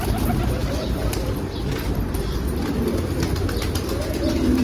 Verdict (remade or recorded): recorded